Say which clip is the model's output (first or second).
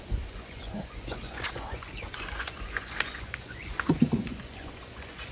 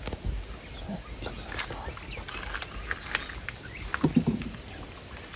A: first